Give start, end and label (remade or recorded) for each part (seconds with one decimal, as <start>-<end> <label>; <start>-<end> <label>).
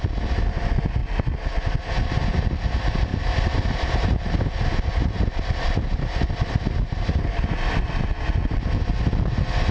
0.0-3.1 recorded; 3.1-8.0 remade; 8.0-9.7 recorded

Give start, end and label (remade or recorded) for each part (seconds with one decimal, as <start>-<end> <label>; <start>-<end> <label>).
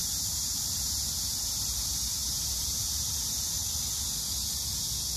0.0-3.6 remade; 3.6-5.2 recorded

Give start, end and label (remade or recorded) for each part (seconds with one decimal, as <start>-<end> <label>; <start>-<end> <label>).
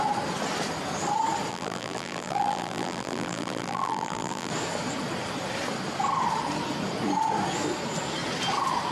0.0-1.5 recorded; 1.5-4.5 remade; 4.5-8.9 recorded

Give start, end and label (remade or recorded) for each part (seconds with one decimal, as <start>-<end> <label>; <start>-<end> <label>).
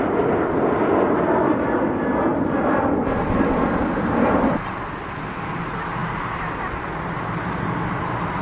0.0-2.3 recorded; 2.3-5.3 remade; 5.3-8.4 recorded